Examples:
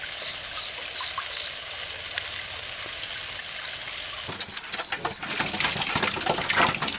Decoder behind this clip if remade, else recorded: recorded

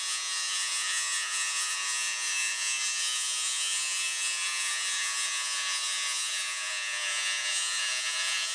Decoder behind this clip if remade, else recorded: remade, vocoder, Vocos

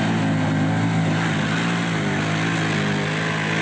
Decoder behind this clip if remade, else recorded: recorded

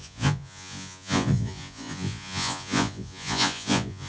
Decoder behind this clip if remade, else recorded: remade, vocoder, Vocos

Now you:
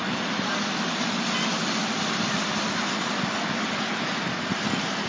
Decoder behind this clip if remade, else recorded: recorded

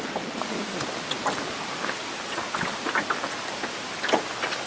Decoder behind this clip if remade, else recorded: recorded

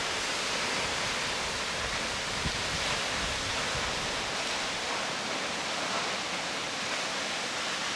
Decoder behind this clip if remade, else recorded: recorded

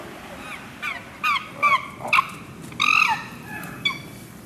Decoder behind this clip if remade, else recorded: recorded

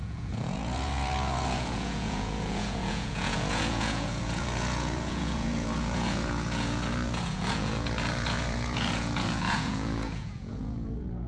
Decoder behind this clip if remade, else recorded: remade, vocoder, Vocos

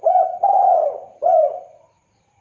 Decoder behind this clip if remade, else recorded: remade, vocoder, Vocos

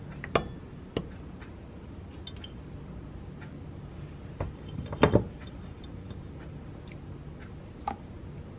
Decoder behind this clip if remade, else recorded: recorded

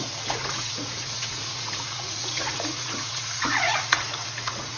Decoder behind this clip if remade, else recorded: remade, vocoder, Vocos